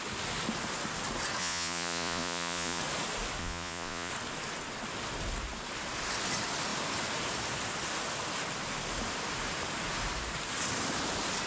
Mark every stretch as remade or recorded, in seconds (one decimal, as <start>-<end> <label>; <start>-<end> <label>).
0.0-1.4 recorded; 1.4-2.8 remade; 2.8-3.4 recorded; 3.4-4.1 remade; 4.1-11.5 recorded

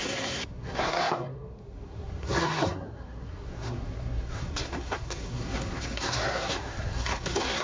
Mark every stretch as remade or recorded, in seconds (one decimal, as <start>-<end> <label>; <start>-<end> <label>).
0.0-7.6 remade

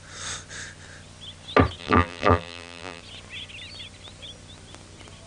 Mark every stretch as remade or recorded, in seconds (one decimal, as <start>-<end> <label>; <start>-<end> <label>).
0.0-1.8 recorded; 1.8-3.0 remade; 3.0-5.3 recorded

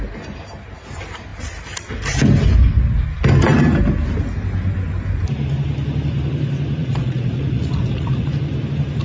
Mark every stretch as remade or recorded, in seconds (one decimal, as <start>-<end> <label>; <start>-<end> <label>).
0.0-6.8 recorded; 6.8-8.3 remade; 8.3-9.0 recorded

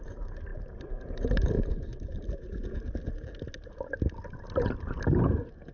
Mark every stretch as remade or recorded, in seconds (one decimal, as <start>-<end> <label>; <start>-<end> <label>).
0.0-1.9 remade; 1.9-5.3 recorded; 5.3-5.7 remade

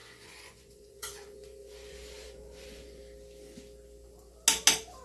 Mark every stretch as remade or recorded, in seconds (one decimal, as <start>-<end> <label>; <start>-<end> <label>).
0.0-3.0 remade; 3.0-5.0 recorded

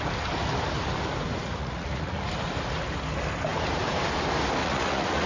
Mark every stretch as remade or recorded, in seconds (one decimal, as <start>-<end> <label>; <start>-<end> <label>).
0.0-1.4 recorded; 1.4-2.3 remade; 2.3-4.6 recorded; 4.6-5.3 remade